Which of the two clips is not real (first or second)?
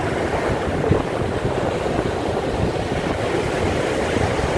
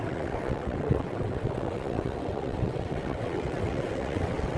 second